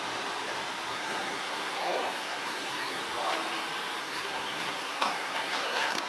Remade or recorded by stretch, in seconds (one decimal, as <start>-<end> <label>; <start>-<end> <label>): 0.0-0.9 recorded; 0.9-3.0 remade; 3.0-4.0 recorded; 4.0-6.1 remade